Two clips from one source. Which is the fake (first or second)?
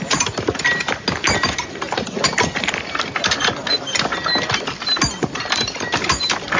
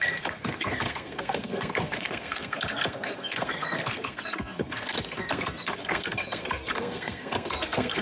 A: second